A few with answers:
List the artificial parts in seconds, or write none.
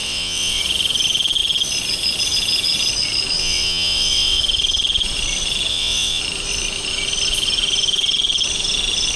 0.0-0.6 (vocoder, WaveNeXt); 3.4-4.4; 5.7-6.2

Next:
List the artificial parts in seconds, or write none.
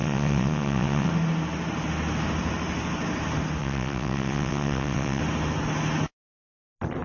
0.0-1.1 (vocoder, WaveNeXt); 3.6-5.2